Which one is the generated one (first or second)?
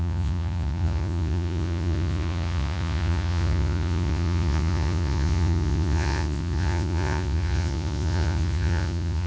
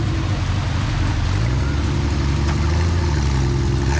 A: first